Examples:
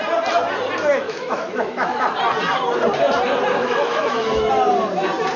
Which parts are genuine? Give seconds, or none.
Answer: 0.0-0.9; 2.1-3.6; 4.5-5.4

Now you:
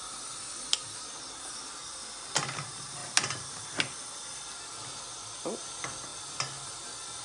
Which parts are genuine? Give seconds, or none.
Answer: 0.0-7.2